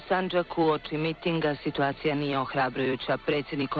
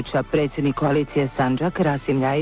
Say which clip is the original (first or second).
second